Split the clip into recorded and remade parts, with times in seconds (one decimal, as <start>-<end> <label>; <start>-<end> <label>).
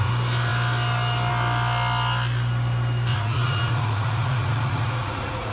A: 0.0-3.1 recorded; 3.1-5.5 remade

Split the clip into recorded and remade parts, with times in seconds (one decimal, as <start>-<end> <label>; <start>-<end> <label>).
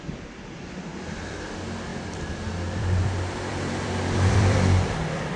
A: 0.0-0.9 recorded; 0.9-1.4 remade; 1.4-1.9 recorded; 1.9-5.4 remade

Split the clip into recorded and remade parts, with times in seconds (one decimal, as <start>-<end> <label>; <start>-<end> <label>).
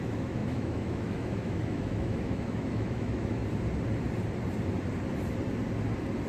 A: 0.0-3.4 remade; 3.4-6.3 recorded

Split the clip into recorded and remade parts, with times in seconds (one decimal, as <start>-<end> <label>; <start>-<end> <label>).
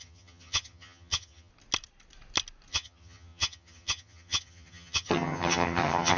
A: 0.0-1.5 remade; 1.5-2.7 recorded; 2.7-6.2 remade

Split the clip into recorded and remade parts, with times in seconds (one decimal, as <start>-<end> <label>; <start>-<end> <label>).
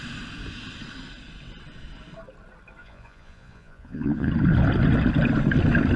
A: 0.0-2.8 recorded; 2.8-4.3 remade; 4.3-6.0 recorded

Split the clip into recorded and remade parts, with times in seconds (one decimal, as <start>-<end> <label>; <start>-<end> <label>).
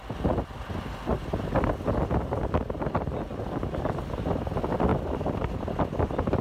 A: 0.0-4.9 recorded; 4.9-6.4 remade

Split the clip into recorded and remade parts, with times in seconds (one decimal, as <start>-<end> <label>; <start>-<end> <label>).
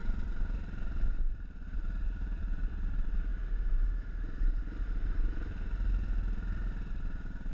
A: 0.0-3.3 remade; 3.3-6.9 recorded; 6.9-7.5 remade